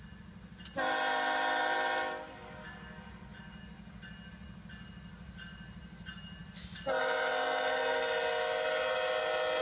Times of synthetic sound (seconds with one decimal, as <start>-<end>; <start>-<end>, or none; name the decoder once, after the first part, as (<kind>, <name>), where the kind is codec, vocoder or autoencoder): none